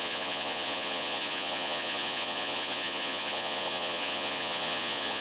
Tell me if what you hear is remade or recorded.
remade